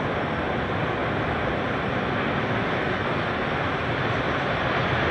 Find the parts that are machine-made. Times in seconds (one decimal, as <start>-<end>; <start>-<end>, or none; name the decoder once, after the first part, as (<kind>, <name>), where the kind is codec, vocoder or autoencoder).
1.0-3.3 (vocoder, BigVGAN v2); 3.8-4.6